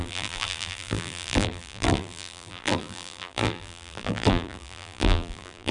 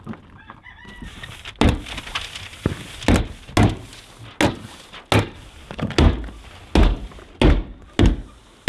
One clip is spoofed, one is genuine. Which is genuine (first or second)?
second